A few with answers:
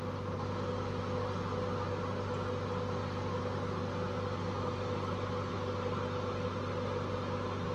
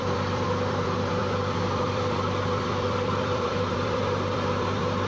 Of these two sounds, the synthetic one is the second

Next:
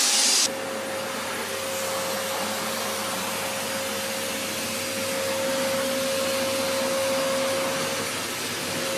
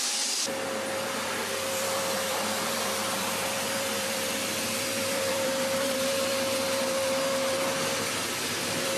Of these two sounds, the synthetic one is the second